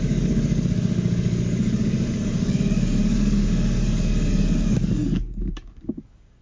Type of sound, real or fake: fake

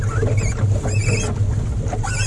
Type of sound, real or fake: real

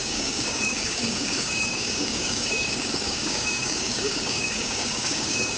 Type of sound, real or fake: fake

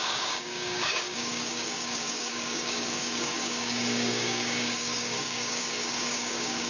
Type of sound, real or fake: fake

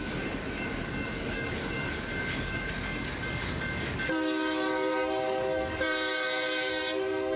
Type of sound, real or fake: fake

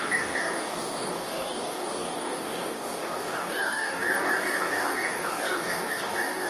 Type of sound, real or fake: fake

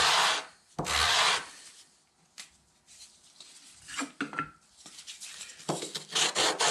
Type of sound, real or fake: real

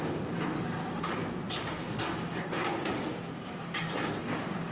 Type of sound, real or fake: real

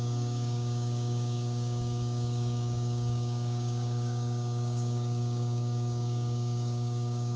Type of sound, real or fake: fake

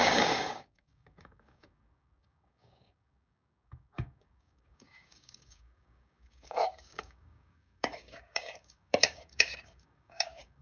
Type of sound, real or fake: fake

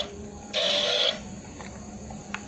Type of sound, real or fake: fake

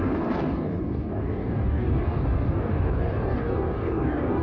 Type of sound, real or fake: fake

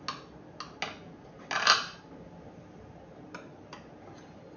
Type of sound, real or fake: real